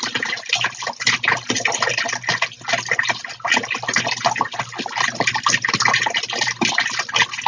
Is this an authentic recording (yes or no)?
yes